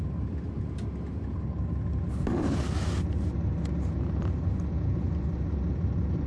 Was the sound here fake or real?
real